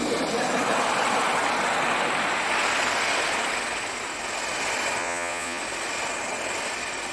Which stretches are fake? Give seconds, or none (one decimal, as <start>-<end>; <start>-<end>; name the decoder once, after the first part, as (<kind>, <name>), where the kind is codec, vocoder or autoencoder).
5.0-5.6 (vocoder, Vocos)